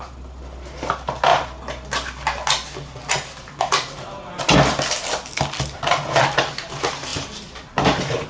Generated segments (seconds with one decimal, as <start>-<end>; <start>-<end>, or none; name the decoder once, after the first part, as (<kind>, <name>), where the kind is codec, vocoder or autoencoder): none